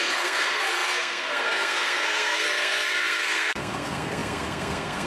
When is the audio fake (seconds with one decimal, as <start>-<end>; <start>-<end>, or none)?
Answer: 0.0-5.1